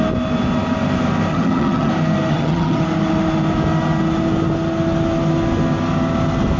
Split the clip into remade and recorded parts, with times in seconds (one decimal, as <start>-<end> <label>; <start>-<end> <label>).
0.0-1.3 recorded; 1.3-1.9 remade; 1.9-2.3 recorded; 2.3-2.8 remade; 2.8-6.6 recorded